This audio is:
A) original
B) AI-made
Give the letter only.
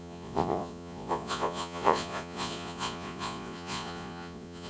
B